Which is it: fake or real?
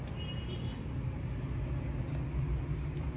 real